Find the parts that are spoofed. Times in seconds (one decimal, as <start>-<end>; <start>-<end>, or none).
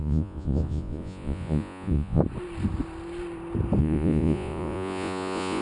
0.0-2.2; 3.8-5.6